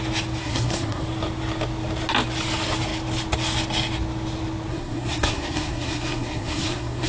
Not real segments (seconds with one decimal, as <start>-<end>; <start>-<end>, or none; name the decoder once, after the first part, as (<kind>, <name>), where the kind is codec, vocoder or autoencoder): 0.4-1.0 (codec, SNAC); 4.7-7.1